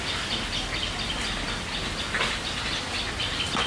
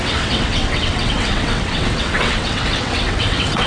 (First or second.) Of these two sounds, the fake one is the second